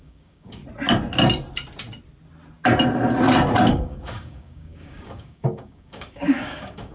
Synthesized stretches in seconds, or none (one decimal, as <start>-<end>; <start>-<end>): 0.0-0.6; 3.7-6.9